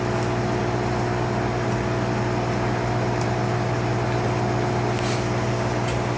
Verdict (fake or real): real